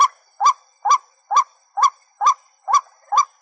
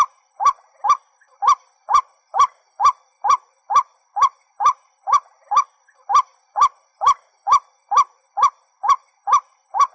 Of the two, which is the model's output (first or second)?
second